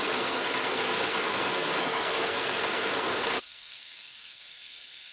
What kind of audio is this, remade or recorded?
remade